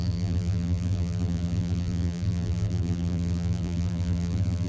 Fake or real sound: fake